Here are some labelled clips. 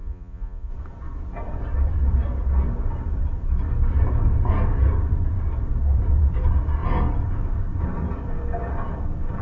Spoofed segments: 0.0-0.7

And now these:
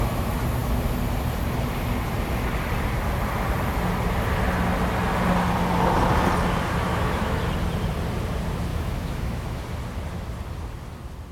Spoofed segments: 6.9-7.4; 8.7-9.6

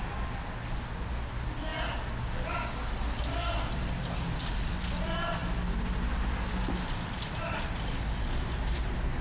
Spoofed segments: none

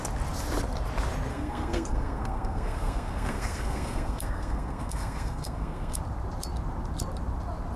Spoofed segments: 1.3-6.0